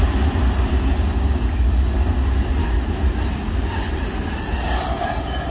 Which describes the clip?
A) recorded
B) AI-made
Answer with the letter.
A